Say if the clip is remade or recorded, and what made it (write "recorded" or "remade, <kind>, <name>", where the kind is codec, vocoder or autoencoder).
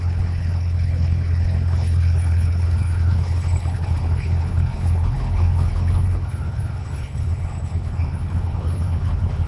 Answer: remade, codec, HILCodec